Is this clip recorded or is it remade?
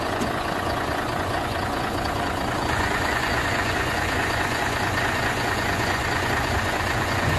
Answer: remade